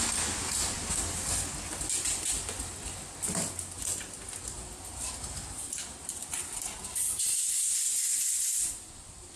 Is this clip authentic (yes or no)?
yes